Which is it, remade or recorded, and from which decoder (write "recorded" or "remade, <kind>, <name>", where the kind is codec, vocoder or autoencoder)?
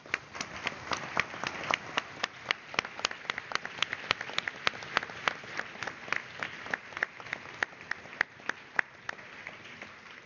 recorded